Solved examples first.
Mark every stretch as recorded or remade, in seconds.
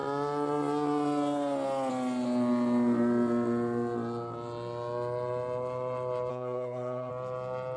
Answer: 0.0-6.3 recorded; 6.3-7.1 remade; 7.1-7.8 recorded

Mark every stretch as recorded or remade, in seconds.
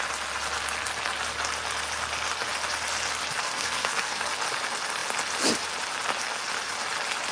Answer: 0.0-3.4 recorded; 3.4-4.3 remade; 4.3-7.3 recorded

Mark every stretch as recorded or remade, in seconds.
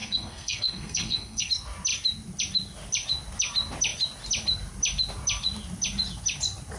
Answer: 0.0-1.5 remade; 1.5-6.8 recorded